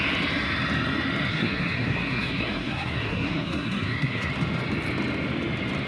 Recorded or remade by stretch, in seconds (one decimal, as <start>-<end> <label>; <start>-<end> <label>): 0.0-1.3 recorded; 1.3-4.3 remade; 4.3-5.9 recorded